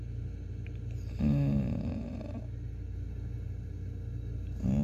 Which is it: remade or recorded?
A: recorded